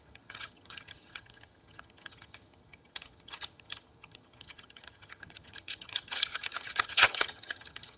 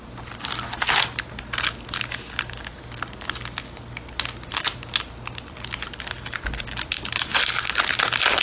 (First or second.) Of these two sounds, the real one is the second